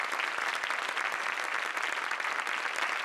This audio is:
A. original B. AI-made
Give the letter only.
A